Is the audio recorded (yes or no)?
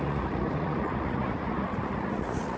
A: no